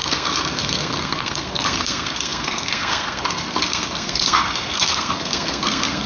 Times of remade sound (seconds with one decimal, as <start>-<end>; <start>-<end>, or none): 0.0-6.1